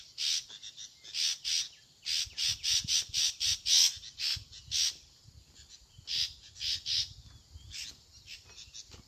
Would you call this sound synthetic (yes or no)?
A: no